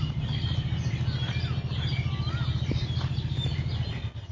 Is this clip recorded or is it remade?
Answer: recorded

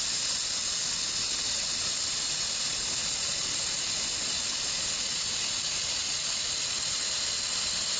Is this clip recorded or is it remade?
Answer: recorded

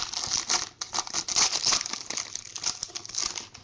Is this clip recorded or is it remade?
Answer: recorded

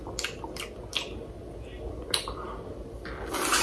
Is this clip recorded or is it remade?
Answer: recorded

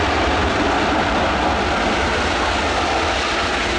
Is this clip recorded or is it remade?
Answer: recorded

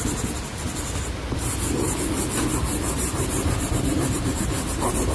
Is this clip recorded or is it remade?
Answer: recorded